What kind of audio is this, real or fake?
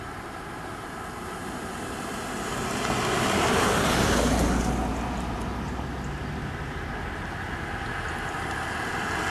real